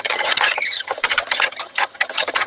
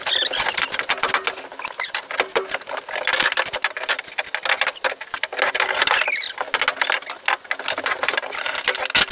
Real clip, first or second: second